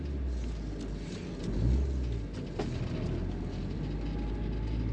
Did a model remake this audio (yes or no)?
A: no